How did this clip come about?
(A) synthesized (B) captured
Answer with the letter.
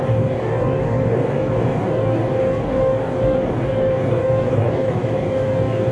A